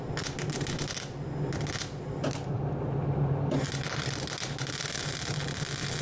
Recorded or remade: recorded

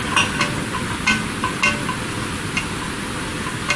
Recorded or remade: recorded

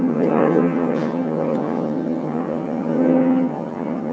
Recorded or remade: remade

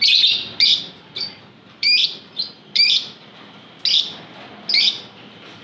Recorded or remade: recorded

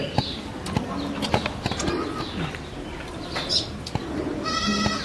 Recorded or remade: recorded